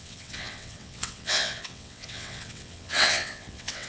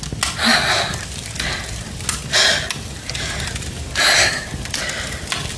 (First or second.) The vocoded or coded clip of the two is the first